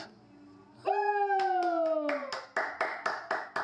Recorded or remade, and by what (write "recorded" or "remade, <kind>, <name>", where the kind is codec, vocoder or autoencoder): recorded